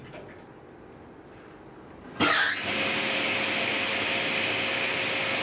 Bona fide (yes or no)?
yes